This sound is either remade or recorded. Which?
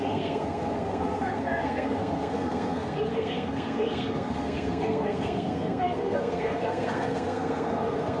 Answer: remade